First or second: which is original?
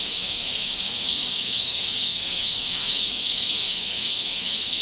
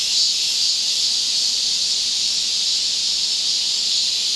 second